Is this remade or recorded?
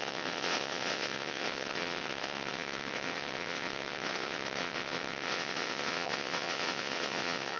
remade